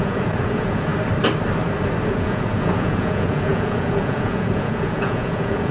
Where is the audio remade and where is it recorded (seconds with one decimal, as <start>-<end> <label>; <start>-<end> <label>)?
0.0-0.9 remade; 0.9-2.1 recorded; 2.1-5.7 remade